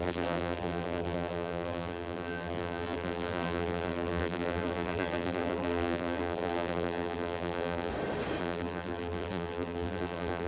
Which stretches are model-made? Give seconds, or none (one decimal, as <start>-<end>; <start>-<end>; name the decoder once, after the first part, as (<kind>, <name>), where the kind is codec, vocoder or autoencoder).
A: 0.0-7.9 (vocoder, BigVGAN v2); 8.4-10.5